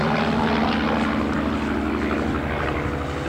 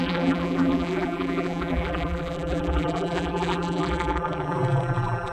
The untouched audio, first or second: first